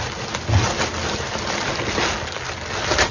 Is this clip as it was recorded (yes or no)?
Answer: yes